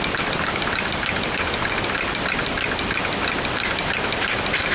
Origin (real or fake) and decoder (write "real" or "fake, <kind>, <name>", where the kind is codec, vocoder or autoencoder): fake, vocoder, BigVGAN v2